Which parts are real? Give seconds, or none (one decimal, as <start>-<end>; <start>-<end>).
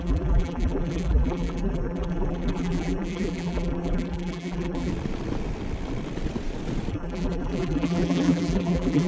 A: 4.9-6.9